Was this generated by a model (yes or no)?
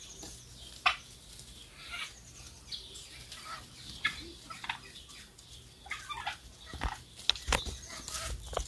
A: no